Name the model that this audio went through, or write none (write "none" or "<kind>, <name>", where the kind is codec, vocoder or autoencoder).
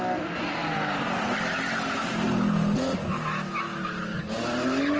none